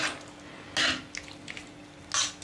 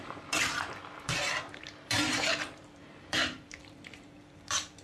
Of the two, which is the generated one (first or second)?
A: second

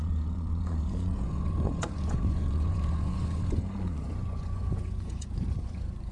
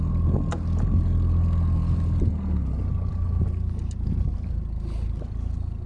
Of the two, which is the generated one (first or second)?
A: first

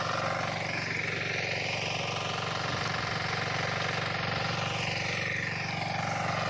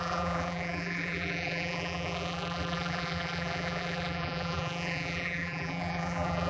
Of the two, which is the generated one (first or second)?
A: second